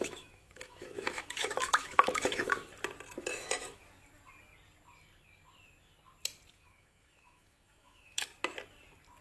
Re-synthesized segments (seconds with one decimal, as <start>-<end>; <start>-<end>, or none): 0.0-2.6; 3.2-3.8; 6.5-8.3